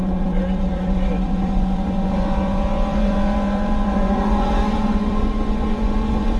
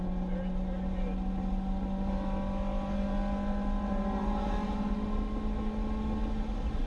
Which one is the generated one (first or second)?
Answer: first